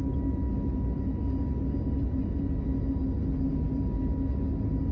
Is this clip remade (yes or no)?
no